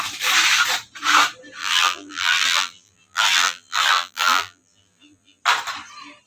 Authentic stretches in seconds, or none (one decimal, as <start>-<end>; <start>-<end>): 0.0-1.6; 5.4-6.3